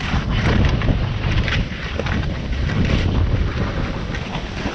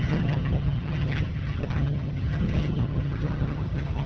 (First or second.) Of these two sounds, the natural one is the first